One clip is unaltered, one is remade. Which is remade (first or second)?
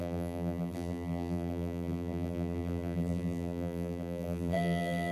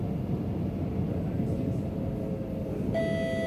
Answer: first